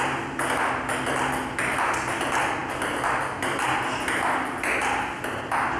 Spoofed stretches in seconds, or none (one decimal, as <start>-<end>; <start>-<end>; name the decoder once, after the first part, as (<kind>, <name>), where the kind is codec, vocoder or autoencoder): none